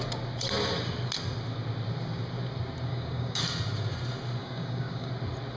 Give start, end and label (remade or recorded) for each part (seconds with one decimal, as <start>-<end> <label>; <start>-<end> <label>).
0.0-2.9 recorded; 2.9-3.4 remade; 3.4-4.4 recorded; 4.4-5.1 remade; 5.1-5.6 recorded